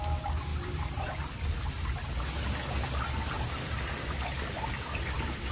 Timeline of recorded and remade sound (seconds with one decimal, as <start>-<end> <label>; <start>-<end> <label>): 0.0-0.5 recorded; 0.5-1.2 remade; 1.2-5.5 recorded